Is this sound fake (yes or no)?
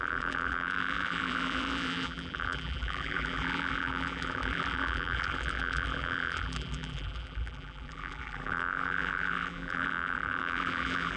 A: yes